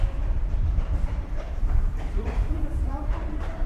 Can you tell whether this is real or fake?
fake